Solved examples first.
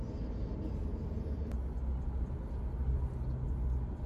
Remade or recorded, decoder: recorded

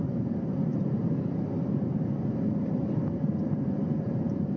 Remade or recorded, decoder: remade, vocoder, BigVGAN v2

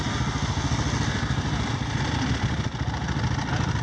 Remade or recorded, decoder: recorded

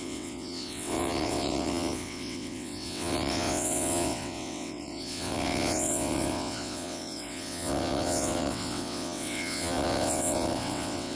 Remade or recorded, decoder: remade, vocoder, WaveNeXt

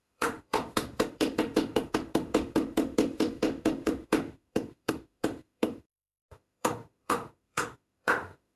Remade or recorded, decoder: remade, autoencoder, DAC-VAE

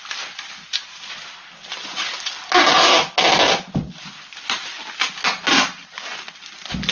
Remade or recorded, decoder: recorded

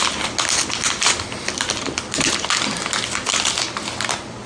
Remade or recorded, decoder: recorded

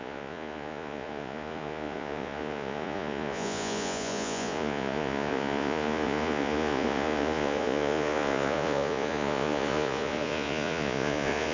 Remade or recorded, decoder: remade, vocoder, Vocos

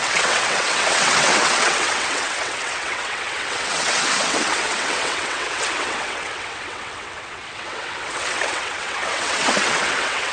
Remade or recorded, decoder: remade, vocoder, WaveNeXt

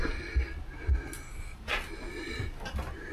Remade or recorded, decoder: recorded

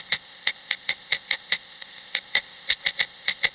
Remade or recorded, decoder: remade, codec, ZipCodec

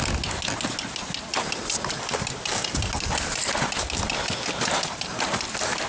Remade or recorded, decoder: recorded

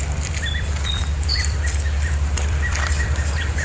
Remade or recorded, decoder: remade, vocoder, BigVGAN v2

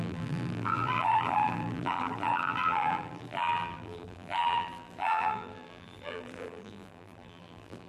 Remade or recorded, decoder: remade, vocoder, BigVGAN v2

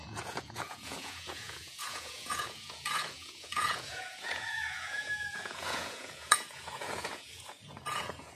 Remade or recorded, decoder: remade, vocoder, Vocos